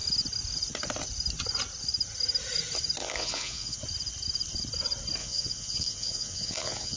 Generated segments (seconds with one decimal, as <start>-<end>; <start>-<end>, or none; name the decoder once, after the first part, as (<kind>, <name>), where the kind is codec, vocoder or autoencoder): 3.0-3.8 (vocoder, Vocos); 5.2-7.0